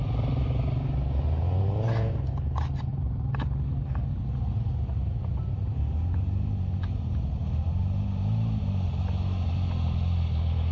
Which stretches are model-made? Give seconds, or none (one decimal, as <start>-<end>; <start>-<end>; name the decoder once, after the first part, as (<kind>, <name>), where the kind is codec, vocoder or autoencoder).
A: none